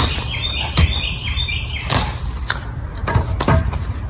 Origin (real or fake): real